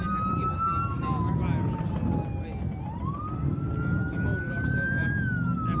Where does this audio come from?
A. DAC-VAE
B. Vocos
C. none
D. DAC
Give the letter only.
C